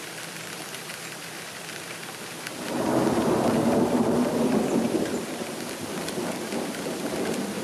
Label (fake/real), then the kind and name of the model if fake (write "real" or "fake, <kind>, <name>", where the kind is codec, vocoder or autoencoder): real